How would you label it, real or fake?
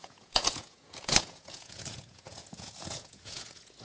fake